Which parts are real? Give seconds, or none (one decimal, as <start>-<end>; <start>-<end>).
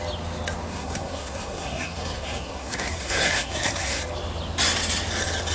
0.0-0.7; 4.0-5.5